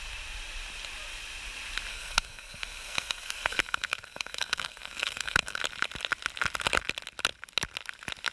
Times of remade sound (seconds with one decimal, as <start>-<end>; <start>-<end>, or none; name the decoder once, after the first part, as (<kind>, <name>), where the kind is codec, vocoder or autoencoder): 1.9-5.6 (codec, SNAC)